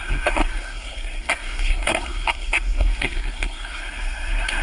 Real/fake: fake